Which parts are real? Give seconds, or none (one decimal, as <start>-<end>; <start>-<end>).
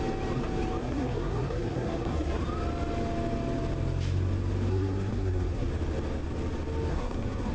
0.0-0.8; 2.4-4.7; 5.7-6.9